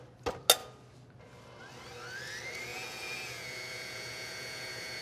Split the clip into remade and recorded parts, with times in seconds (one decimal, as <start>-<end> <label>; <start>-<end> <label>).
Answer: 0.0-2.7 recorded; 2.7-5.0 remade